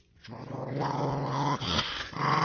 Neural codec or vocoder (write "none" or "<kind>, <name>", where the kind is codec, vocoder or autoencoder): vocoder, Vocos